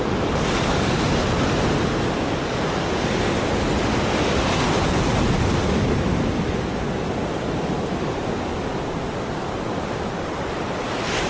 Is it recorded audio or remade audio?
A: recorded